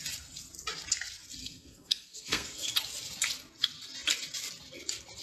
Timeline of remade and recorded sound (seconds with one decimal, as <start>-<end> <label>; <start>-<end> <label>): 0.0-1.4 recorded; 1.4-2.7 remade; 2.7-5.2 recorded

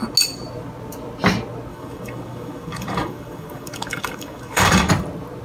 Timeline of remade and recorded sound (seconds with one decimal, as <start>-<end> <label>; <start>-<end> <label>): 0.0-1.7 recorded; 1.7-4.9 remade; 4.9-5.4 recorded